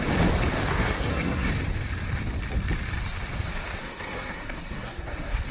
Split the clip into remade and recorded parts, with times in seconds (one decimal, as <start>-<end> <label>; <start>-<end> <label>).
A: 0.0-0.7 recorded; 0.7-1.5 remade; 1.5-3.8 recorded; 3.8-5.5 remade